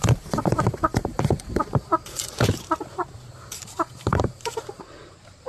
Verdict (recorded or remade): remade